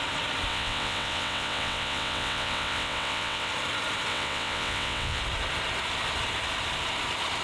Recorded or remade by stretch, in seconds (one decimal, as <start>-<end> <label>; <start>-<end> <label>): 0.0-0.5 recorded; 0.5-3.5 remade; 3.5-4.1 recorded; 4.1-5.2 remade; 5.2-7.4 recorded